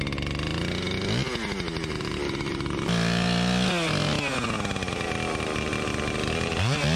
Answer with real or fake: real